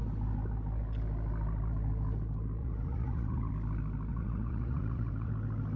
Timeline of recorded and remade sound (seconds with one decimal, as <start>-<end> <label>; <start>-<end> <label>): 0.0-2.6 recorded; 2.6-3.5 remade; 3.5-4.1 recorded; 4.1-5.3 remade; 5.3-5.8 recorded